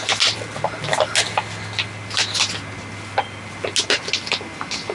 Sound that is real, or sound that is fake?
real